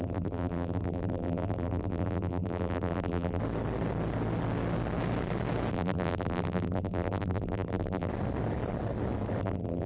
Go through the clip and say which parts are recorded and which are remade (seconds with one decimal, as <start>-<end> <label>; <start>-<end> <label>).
0.0-3.4 remade; 3.4-5.7 recorded; 5.7-8.1 remade; 8.1-9.4 recorded; 9.4-9.9 remade